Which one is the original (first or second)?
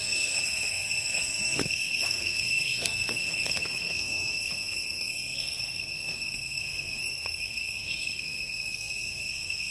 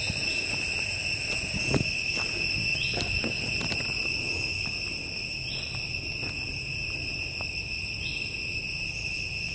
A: second